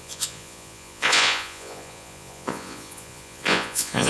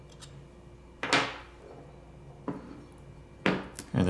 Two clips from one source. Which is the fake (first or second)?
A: first